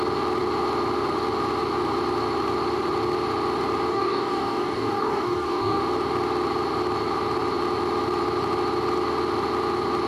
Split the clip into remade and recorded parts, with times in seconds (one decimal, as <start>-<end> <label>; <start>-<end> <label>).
0.0-3.9 recorded; 3.9-5.8 remade; 5.8-10.1 recorded

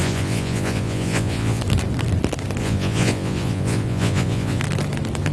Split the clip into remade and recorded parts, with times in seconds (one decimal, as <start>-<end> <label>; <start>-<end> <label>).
0.0-1.6 remade; 1.6-2.6 recorded; 2.6-4.6 remade; 4.6-5.3 recorded

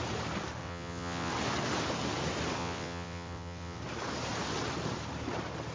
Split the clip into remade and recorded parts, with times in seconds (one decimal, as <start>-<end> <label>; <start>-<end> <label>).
0.0-0.6 recorded; 0.6-1.3 remade; 1.3-2.6 recorded; 2.6-3.8 remade; 3.8-5.7 recorded

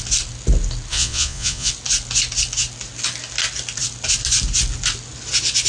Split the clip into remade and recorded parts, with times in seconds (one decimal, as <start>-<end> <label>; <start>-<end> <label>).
0.0-0.9 recorded; 0.9-1.7 remade; 1.7-5.7 recorded

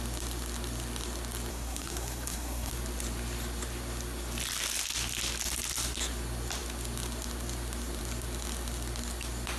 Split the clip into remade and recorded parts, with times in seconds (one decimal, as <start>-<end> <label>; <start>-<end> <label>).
0.0-1.5 recorded; 1.5-2.7 remade; 2.7-9.6 recorded

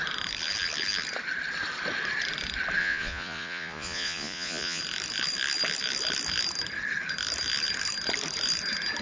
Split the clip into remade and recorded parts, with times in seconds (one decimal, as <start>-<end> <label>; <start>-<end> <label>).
0.0-2.8 recorded; 2.8-4.8 remade; 4.8-9.0 recorded